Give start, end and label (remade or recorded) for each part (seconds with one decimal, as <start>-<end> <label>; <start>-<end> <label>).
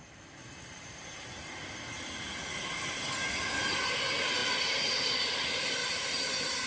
0.0-0.4 recorded; 0.4-1.5 remade; 1.5-5.8 recorded; 5.8-6.7 remade